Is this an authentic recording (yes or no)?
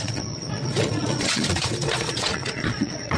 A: no